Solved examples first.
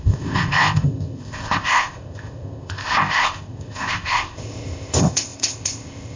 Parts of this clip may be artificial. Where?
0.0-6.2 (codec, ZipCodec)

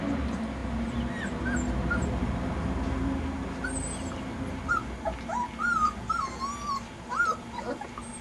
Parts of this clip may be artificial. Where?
none

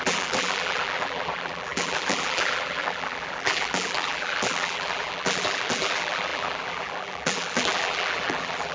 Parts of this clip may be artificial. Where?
0.0-8.7 (vocoder, BigVGAN v2)

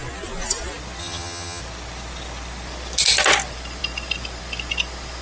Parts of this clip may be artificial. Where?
1.0-1.6 (vocoder, HiFi-GAN)

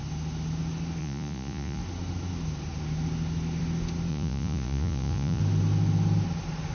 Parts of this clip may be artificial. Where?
1.0-1.8 (vocoder, Vocos); 4.1-5.4

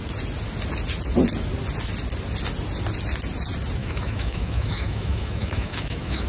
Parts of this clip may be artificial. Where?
3.8-6.3 (autoencoder, DAC-VAE)

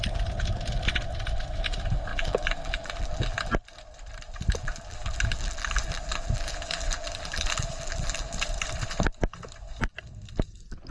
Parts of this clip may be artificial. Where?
2.1-3.4 (vocoder, BigVGAN v2); 4.6-8.3